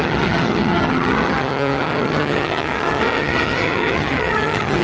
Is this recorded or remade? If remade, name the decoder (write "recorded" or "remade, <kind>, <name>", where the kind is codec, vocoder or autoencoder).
remade, vocoder, HiFi-GAN